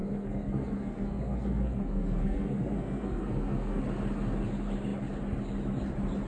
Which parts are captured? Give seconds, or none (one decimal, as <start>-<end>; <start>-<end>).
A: 3.8-6.3

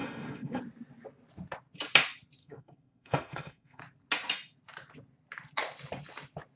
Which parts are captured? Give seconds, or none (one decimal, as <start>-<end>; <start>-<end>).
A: 0.6-2.4; 3.8-6.6

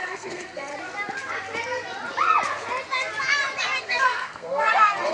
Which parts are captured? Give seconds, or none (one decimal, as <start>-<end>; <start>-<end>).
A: 0.7-3.8

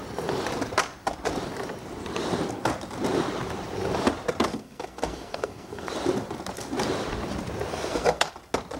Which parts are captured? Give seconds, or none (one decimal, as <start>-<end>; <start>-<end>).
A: 0.0-4.5; 5.9-7.7; 8.3-8.8

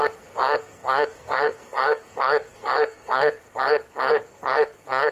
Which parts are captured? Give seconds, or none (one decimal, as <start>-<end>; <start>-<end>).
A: none

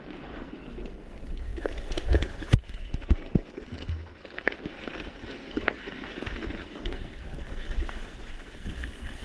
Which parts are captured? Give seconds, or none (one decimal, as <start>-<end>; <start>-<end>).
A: none

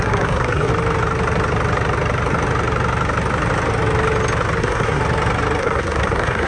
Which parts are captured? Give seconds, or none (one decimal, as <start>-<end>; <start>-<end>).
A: 0.7-4.6; 5.0-5.6